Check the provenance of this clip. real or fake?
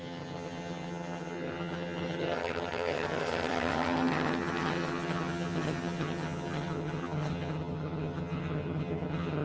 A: fake